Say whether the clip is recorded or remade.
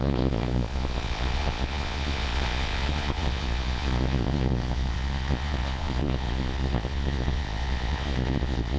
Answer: remade